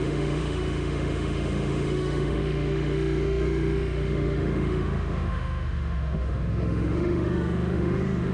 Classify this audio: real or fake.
fake